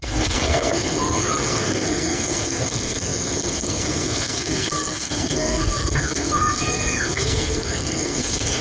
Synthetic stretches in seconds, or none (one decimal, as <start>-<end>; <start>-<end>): 0.0-8.6